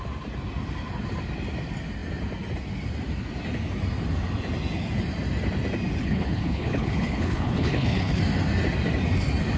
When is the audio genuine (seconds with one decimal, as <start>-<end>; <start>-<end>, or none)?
0.0-6.0; 8.2-9.6